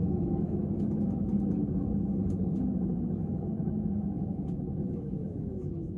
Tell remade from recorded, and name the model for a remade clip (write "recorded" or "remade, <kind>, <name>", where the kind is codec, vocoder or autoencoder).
remade, autoencoder, DAC-VAE